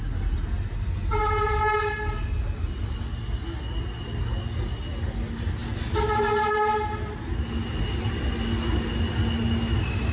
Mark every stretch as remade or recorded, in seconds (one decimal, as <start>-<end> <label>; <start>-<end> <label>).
0.0-10.1 recorded